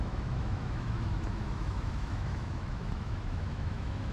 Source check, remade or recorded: remade